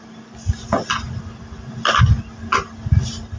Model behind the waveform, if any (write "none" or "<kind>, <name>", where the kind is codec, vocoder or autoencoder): none